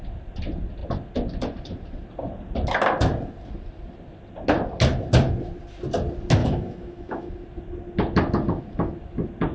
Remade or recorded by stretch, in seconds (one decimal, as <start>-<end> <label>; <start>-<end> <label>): 0.0-6.4 recorded; 6.4-7.3 remade; 7.3-9.5 recorded